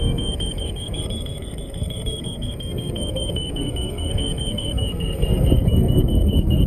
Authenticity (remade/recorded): remade